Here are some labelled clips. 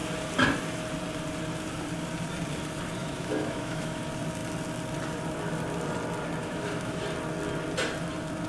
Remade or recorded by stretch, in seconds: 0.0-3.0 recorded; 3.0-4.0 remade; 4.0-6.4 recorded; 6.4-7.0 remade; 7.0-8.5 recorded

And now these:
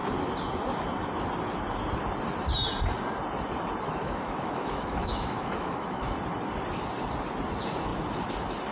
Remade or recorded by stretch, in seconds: 0.0-4.0 recorded; 4.0-6.1 remade; 6.1-8.7 recorded

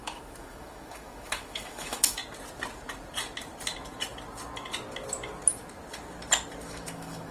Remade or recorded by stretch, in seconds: 0.0-2.2 remade; 2.2-6.6 recorded; 6.6-7.3 remade